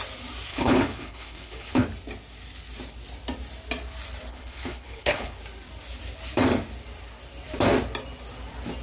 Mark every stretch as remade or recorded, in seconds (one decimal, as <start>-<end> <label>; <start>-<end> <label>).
0.0-0.5 recorded; 0.5-1.8 remade; 1.8-4.3 recorded; 4.3-5.4 remade; 5.4-8.8 recorded